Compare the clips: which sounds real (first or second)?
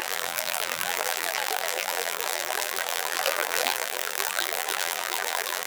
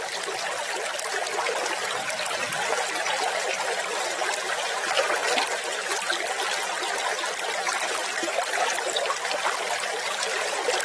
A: second